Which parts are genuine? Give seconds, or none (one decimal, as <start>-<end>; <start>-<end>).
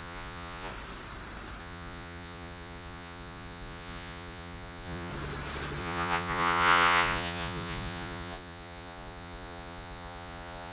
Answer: 0.7-1.6; 5.1-5.8